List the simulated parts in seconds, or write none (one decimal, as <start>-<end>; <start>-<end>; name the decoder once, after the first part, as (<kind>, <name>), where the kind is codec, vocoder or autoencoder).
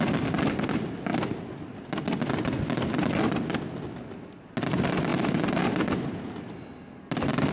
5.1-6.1 (vocoder, BigVGAN v2)